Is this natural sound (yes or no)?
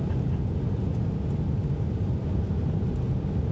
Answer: yes